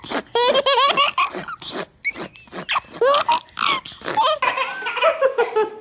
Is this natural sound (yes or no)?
yes